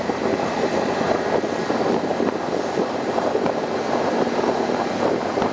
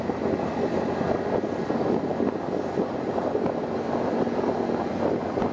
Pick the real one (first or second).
second